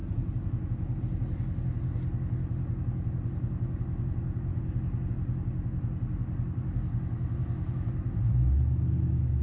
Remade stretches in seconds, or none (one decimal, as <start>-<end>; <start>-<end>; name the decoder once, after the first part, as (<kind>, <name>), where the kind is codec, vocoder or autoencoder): none